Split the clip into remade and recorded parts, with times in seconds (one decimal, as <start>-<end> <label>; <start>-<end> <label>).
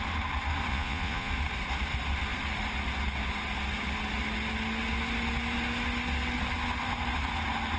0.0-0.7 recorded; 0.7-1.3 remade; 1.3-7.8 recorded